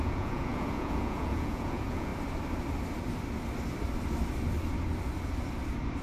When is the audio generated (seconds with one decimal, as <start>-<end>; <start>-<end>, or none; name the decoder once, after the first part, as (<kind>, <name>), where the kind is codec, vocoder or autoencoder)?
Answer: 0.0-2.1 (vocoder, Vocos)